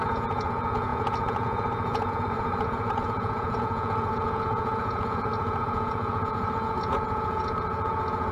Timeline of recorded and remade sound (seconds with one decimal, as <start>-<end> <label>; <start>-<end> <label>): 0.0-8.3 remade